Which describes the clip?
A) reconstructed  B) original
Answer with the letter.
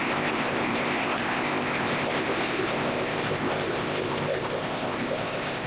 A